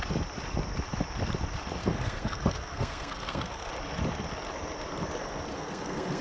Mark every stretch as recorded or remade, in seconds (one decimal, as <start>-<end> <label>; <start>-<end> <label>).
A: 0.0-1.8 recorded; 1.8-3.7 remade; 3.7-5.5 recorded; 5.5-6.2 remade